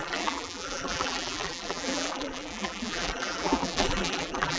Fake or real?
fake